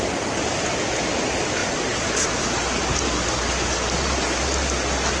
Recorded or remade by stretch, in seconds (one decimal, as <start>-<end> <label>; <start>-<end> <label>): 0.0-5.2 recorded